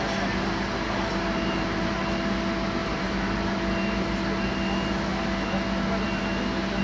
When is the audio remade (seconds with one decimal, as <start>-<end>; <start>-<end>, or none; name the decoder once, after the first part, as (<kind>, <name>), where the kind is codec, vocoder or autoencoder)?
1.1-1.9 (vocoder, BigVGAN v2); 2.8-3.6